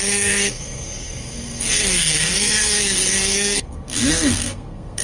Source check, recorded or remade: remade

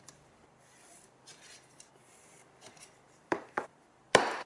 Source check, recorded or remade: remade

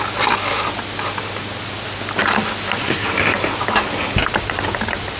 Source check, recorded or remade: recorded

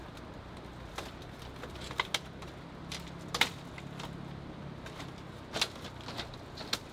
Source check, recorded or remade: recorded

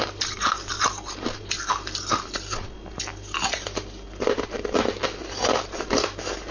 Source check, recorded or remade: recorded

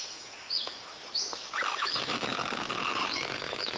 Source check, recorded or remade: remade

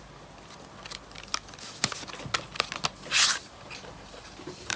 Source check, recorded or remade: recorded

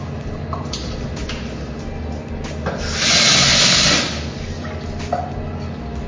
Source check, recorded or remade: recorded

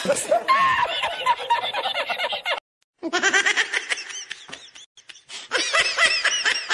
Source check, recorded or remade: recorded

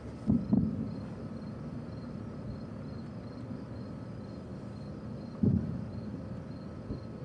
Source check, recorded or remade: recorded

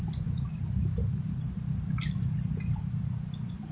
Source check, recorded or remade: recorded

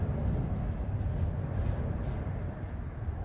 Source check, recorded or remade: recorded